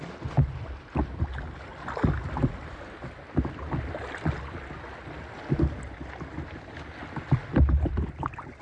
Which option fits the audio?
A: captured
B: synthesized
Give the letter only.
A